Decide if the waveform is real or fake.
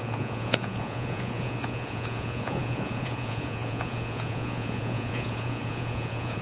fake